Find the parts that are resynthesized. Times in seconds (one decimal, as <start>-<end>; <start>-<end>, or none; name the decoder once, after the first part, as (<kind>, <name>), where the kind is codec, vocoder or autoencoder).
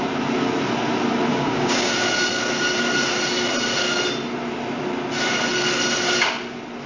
1.3-1.9 (codec, DAC)